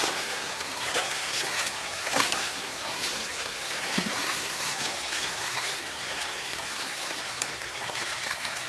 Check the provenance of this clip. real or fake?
fake